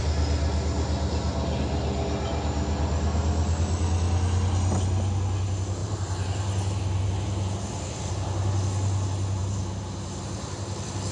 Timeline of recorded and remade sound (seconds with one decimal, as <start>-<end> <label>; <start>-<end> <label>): 0.0-5.8 recorded; 5.8-8.1 remade; 8.1-9.4 recorded; 9.4-10.2 remade; 10.2-11.1 recorded